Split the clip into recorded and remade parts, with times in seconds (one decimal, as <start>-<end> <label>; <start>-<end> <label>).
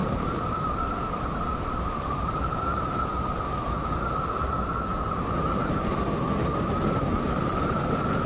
0.0-3.0 remade; 3.0-4.9 recorded; 4.9-5.9 remade; 5.9-8.3 recorded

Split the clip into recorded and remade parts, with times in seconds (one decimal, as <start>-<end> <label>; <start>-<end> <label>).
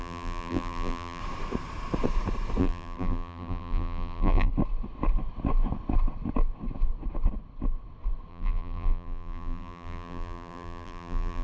0.0-1.2 remade; 1.2-2.6 recorded; 2.6-4.5 remade; 4.5-8.3 recorded; 8.3-11.4 remade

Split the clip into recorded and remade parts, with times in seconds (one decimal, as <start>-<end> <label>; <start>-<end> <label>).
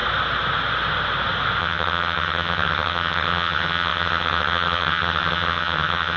0.0-1.6 recorded; 1.6-6.2 remade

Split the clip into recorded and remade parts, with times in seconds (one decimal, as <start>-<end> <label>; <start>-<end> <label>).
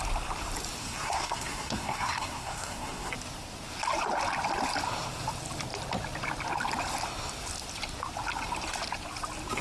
0.0-0.8 recorded; 0.8-3.1 remade; 3.1-9.6 recorded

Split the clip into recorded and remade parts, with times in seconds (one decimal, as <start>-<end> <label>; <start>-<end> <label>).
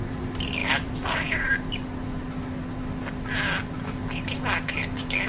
0.0-0.6 recorded; 0.6-1.8 remade; 1.8-5.3 recorded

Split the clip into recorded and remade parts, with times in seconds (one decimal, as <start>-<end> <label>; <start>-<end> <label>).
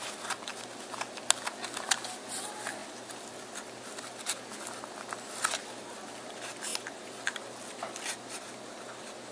0.0-9.3 recorded